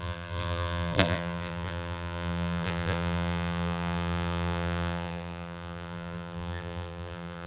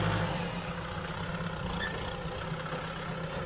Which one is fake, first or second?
first